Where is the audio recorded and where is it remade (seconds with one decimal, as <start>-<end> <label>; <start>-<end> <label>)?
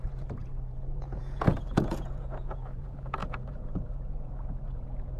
0.0-5.2 remade